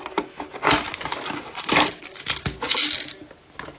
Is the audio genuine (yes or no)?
yes